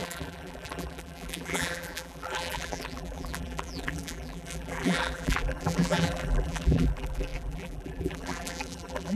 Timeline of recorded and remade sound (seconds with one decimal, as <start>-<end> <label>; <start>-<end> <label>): 0.0-9.2 remade